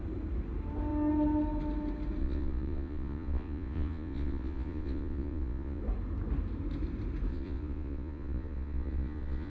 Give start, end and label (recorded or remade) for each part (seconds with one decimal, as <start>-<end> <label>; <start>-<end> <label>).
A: 0.0-2.2 recorded; 2.2-5.8 remade; 5.8-7.3 recorded; 7.3-9.5 remade

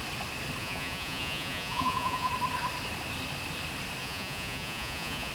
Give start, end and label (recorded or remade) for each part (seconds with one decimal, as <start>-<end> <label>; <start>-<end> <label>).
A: 0.0-0.6 recorded; 0.6-2.3 remade; 2.3-4.0 recorded; 4.0-5.3 remade

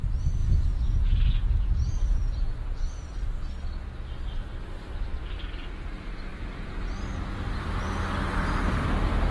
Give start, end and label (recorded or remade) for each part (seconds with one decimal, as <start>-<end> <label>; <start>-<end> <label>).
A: 0.0-0.4 recorded; 0.4-2.8 remade; 2.8-9.3 recorded

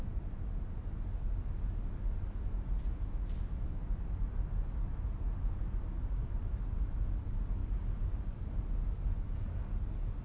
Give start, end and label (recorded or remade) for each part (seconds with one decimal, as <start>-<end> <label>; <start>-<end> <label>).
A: 0.0-10.2 recorded

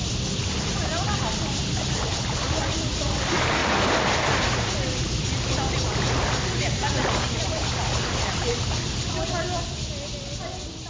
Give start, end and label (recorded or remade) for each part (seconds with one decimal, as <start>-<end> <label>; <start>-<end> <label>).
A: 0.0-10.9 recorded

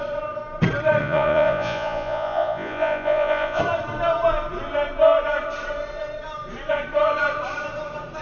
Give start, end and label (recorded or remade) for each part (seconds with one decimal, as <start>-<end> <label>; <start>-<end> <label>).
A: 0.0-1.0 recorded; 1.0-3.6 remade; 3.6-8.2 recorded

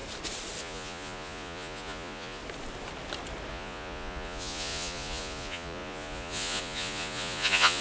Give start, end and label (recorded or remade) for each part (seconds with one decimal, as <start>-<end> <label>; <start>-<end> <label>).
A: 0.0-0.6 recorded; 0.6-2.4 remade; 2.4-3.5 recorded; 3.5-7.8 remade

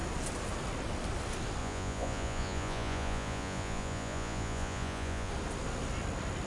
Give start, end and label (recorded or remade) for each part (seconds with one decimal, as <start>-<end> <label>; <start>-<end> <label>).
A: 0.0-1.6 recorded; 1.6-5.3 remade; 5.3-6.5 recorded